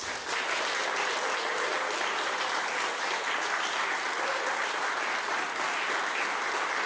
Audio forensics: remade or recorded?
recorded